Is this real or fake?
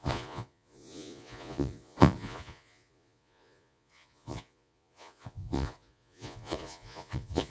fake